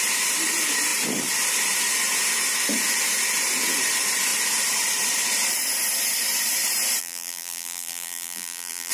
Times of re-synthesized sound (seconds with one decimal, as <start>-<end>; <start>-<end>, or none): 7.0-8.9